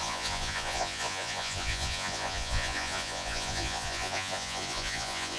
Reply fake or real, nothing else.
fake